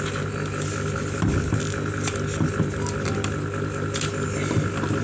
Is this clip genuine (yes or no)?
yes